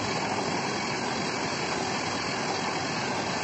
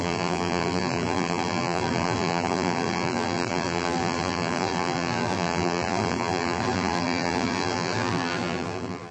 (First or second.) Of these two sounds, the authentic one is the first